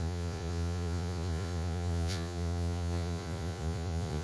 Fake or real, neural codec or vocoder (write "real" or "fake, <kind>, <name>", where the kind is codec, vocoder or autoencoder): fake, vocoder, Vocos